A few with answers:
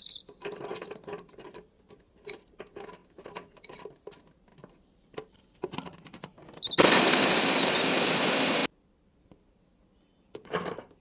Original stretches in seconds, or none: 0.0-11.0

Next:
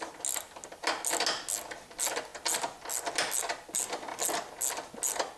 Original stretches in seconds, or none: 0.0-5.4